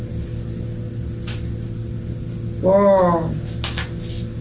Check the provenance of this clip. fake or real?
real